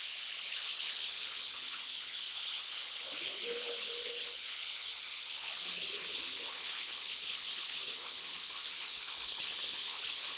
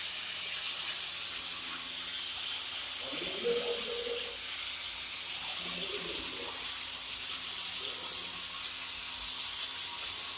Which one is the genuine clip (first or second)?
second